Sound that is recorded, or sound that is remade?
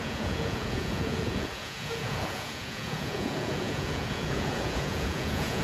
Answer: remade